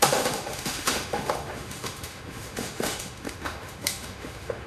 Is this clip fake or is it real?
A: fake